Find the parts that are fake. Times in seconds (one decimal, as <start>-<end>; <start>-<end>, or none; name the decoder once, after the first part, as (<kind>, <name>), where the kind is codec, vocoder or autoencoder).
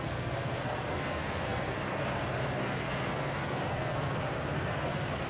0.0-5.3 (codec, SNAC)